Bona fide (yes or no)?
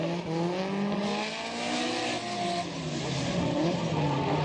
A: yes